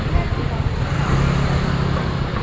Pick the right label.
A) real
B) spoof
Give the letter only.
A